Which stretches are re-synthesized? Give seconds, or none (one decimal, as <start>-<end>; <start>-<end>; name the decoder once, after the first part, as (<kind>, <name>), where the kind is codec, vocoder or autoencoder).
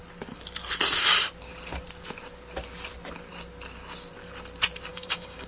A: 4.9-5.5 (codec, DAC)